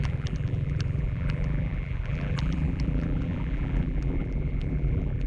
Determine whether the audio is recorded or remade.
remade